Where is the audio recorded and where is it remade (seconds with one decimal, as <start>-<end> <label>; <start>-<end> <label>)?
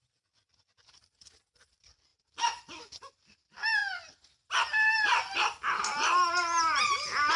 0.0-3.8 remade; 3.8-4.3 recorded; 4.3-7.4 remade